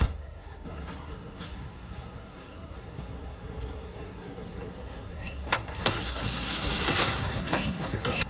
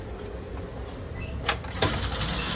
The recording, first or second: second